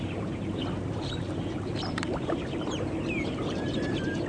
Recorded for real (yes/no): no